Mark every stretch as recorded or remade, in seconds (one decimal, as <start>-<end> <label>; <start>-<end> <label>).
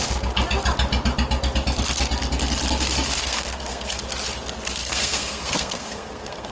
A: 0.0-3.2 recorded; 3.2-4.0 remade; 4.0-4.8 recorded; 4.8-6.5 remade